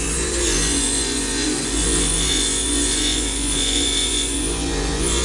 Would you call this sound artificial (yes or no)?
yes